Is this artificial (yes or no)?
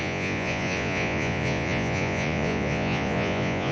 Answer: yes